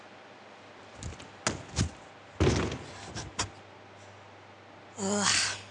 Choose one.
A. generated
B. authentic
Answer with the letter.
B